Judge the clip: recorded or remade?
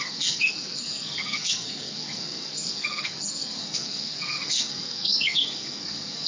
remade